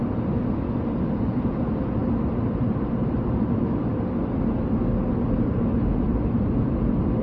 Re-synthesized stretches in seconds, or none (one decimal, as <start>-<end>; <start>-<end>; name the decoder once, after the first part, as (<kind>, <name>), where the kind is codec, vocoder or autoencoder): none

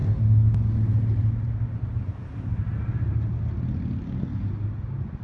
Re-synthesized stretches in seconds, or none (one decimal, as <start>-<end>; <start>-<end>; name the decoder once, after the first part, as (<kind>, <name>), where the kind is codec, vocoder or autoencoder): none

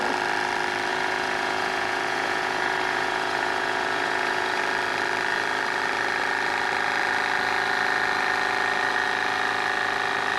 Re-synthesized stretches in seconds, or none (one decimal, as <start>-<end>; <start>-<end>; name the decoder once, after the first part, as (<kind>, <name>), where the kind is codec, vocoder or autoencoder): 0.9-4.6 (vocoder, Vocos)

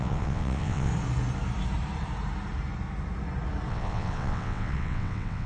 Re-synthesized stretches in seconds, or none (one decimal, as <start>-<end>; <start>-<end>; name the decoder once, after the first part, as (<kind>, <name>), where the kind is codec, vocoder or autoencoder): 0.0-0.9 (vocoder, WaveNeXt); 3.7-5.5

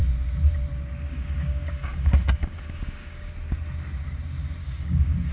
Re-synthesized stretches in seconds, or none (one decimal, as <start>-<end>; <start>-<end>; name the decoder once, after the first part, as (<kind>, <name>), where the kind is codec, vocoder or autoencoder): 1.1-3.3 (codec, DAC); 4.6-5.3

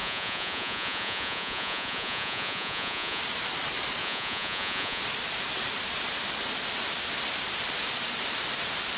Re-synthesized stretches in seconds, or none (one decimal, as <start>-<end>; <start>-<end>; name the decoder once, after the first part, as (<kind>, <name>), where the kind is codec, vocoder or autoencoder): 0.0-3.2 (vocoder, Vocos); 4.0-5.0